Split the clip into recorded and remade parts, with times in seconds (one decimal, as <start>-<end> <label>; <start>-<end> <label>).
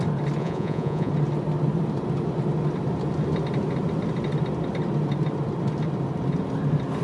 0.0-0.4 recorded; 0.4-1.1 remade; 1.1-7.0 recorded